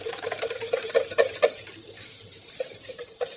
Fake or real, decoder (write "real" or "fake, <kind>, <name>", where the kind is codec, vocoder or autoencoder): fake, vocoder, BigVGAN v2